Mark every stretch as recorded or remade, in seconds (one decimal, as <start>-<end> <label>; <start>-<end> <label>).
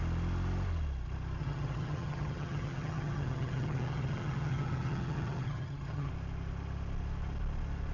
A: 0.0-1.4 recorded; 1.4-6.1 remade; 6.1-7.9 recorded